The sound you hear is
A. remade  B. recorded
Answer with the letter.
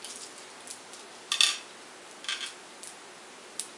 B